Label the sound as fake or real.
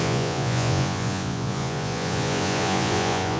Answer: fake